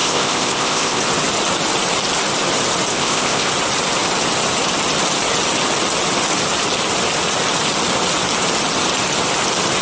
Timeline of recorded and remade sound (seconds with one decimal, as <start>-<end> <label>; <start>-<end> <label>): 0.0-1.0 remade; 1.0-2.9 recorded; 2.9-3.5 remade; 3.5-9.8 recorded